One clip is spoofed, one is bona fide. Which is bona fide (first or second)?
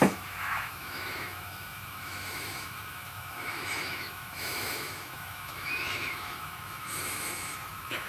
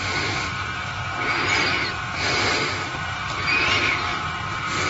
second